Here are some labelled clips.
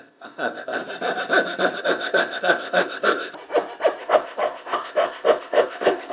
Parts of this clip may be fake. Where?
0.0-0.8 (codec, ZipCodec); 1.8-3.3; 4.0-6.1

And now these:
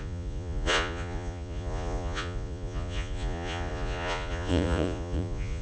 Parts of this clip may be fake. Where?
0.0-5.6 (vocoder, Vocos)

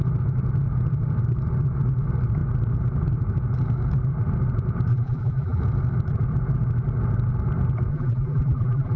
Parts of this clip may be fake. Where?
4.9-5.6 (vocoder, BigVGAN v2); 7.9-9.0

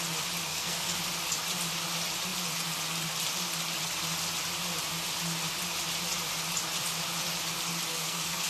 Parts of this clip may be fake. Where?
0.5-1.0 (codec, SNAC); 7.9-8.5

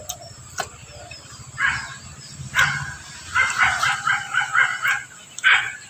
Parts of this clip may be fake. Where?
4.7-5.9 (vocoder, BigVGAN v2)

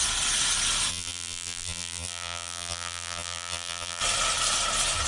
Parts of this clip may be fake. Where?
0.9-4.0 (vocoder, BigVGAN v2)

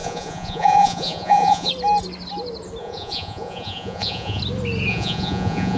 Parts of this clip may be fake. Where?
0.0-1.7 (vocoder, Vocos); 2.8-4.4; 4.9-5.8

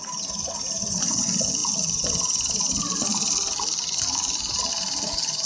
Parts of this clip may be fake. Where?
none